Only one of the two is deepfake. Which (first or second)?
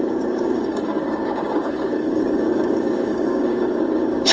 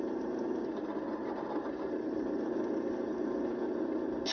first